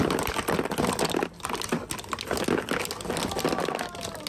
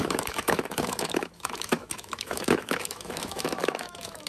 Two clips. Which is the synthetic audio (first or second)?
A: second